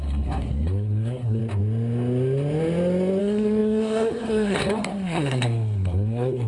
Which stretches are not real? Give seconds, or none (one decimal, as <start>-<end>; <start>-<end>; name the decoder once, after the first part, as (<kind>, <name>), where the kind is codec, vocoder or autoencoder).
0.0-1.4 (codec, SNAC); 3.2-6.5